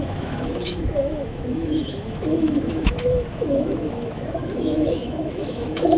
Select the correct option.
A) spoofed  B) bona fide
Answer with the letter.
A